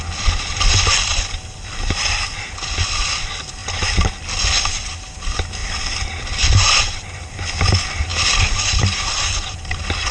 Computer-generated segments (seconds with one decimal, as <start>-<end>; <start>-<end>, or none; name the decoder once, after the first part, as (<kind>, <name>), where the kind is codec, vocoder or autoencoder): none